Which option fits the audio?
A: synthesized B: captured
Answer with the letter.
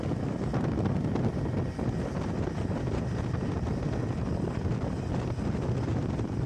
B